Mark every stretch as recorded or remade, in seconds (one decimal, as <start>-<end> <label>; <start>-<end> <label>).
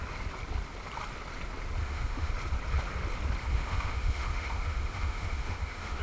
0.0-1.8 recorded; 1.8-2.3 remade; 2.3-3.4 recorded; 3.4-6.0 remade